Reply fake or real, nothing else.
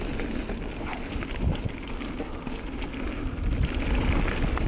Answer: real